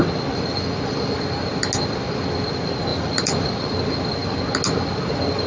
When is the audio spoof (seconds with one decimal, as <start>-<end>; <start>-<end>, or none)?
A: 2.9-3.5